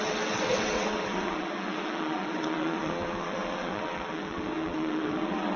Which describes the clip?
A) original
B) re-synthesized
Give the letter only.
B